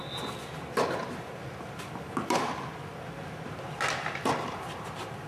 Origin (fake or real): real